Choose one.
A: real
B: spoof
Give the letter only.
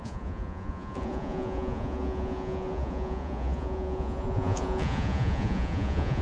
B